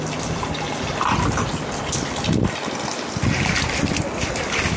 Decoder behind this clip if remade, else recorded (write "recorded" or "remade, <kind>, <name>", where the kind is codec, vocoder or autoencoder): recorded